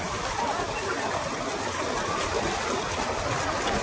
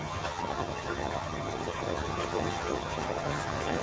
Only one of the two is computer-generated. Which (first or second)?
second